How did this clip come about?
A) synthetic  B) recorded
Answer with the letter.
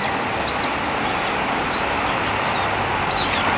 B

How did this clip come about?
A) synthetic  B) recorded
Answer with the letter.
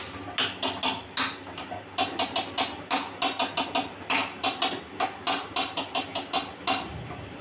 B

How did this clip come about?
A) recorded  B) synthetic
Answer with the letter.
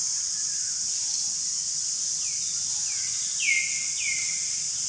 A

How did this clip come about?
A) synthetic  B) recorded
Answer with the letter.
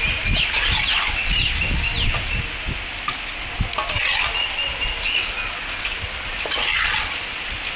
B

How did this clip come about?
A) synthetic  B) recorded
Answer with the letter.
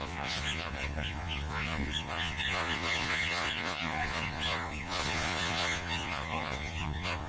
A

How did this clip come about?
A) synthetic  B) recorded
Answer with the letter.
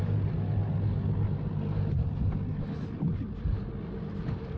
B